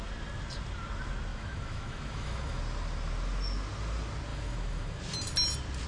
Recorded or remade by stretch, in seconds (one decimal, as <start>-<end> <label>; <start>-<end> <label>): 0.0-1.3 recorded; 1.3-2.6 remade; 2.6-4.3 recorded; 4.3-5.0 remade; 5.0-5.9 recorded